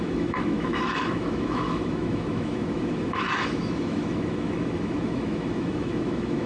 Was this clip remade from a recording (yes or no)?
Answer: yes